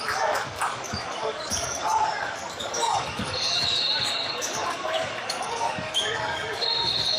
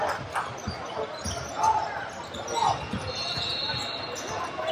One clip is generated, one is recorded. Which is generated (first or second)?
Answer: first